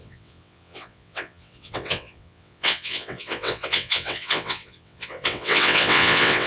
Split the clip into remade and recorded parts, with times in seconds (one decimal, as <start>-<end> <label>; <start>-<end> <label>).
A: 0.0-6.5 remade